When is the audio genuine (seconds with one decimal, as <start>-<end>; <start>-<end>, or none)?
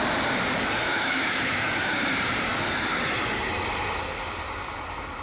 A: 0.0-0.9; 1.9-5.2